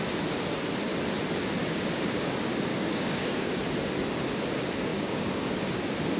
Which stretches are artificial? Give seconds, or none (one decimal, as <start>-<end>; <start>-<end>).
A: 1.6-2.3; 2.7-3.5; 4.9-5.6